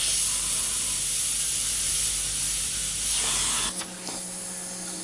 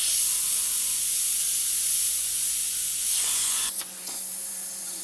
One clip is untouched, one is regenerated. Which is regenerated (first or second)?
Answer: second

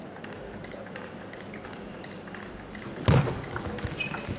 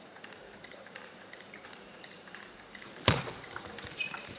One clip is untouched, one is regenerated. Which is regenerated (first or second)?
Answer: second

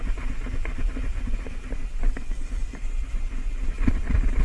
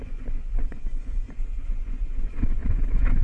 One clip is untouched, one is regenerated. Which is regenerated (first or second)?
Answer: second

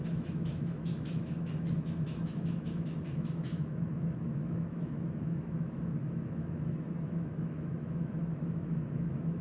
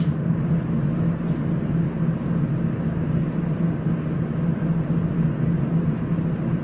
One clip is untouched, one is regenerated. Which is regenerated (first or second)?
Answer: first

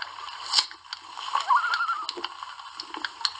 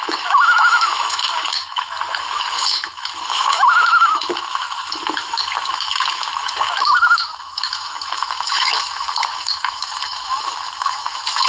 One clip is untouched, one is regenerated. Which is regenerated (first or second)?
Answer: second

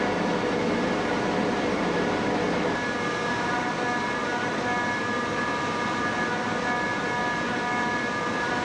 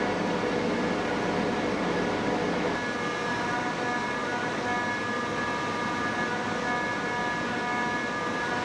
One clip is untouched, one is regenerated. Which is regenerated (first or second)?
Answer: first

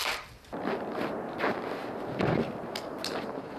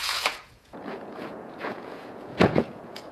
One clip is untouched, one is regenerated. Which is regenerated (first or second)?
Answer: second